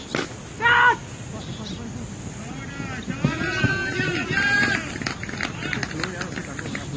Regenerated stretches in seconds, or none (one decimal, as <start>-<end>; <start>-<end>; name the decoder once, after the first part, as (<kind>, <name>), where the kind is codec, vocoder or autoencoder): none